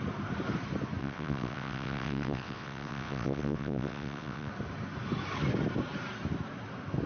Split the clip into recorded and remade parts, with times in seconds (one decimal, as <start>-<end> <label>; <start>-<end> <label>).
0.0-1.0 recorded; 1.0-4.5 remade; 4.5-7.1 recorded

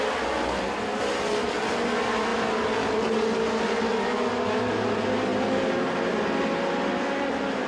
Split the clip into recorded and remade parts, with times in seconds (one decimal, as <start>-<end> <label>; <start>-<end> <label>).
0.0-7.7 recorded

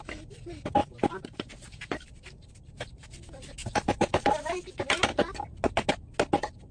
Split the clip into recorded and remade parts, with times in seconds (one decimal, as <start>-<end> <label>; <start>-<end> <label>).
0.0-0.8 recorded; 0.8-3.1 remade; 3.1-3.6 recorded; 3.6-4.6 remade; 4.6-6.7 recorded

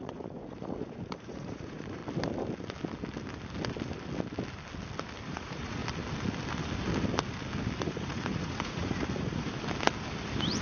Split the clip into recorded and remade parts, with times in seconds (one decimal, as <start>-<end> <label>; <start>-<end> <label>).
0.0-2.0 remade; 2.0-5.3 recorded; 5.3-5.8 remade; 5.8-7.8 recorded; 7.8-9.5 remade; 9.5-10.6 recorded

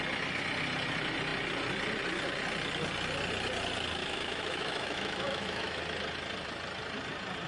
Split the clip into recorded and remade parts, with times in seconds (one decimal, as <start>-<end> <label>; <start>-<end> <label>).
0.0-4.0 recorded; 4.0-5.8 remade; 5.8-7.5 recorded

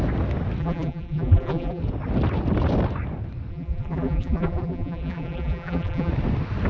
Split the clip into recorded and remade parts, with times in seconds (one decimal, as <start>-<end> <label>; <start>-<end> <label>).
0.0-0.6 recorded; 0.6-1.8 remade; 1.8-3.5 recorded; 3.5-6.1 remade; 6.1-6.7 recorded

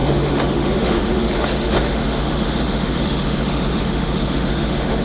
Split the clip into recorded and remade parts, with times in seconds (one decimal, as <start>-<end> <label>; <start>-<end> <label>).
0.0-5.0 remade

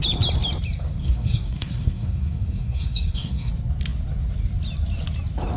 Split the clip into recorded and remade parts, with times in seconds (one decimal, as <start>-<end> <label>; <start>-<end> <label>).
0.0-1.0 recorded; 1.0-3.5 remade; 3.5-5.6 recorded